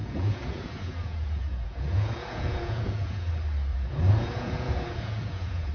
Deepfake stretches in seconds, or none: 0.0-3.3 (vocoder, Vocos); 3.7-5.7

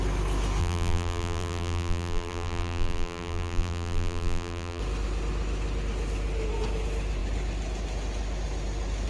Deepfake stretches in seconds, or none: 0.6-4.8 (vocoder, BigVGAN v2)

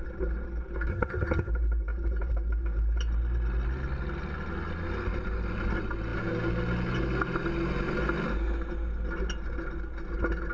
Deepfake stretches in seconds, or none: 0.9-1.5 (vocoder, HiFi-GAN)

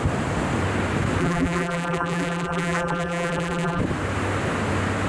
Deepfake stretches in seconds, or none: 1.2-3.8 (vocoder, BigVGAN v2)

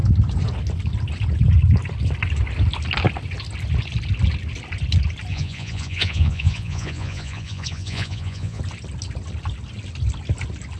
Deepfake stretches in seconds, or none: 5.3-8.6 (vocoder, Vocos)

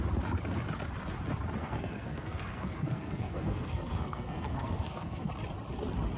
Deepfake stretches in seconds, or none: 1.6-5.3 (codec, SNAC)

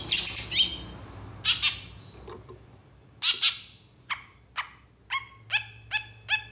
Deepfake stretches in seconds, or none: none

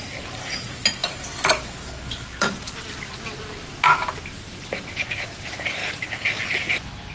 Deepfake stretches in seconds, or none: none